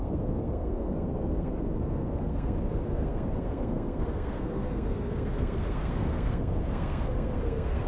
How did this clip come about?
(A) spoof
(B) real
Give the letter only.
A